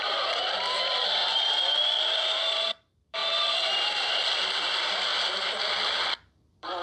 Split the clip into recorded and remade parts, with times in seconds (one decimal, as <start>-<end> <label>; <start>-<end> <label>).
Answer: 0.0-3.2 remade; 3.2-4.0 recorded; 4.0-5.1 remade; 5.1-6.1 recorded; 6.1-6.8 remade